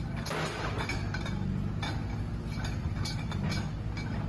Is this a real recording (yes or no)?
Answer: yes